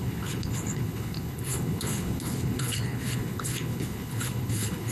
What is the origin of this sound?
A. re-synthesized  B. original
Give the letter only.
A